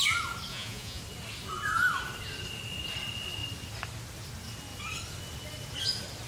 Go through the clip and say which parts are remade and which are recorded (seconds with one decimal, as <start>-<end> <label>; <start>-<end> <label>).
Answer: 0.0-0.5 recorded; 0.5-1.0 remade; 1.0-6.3 recorded